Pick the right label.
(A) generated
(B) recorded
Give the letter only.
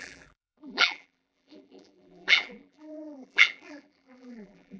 A